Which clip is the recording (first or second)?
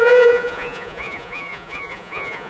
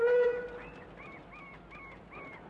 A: second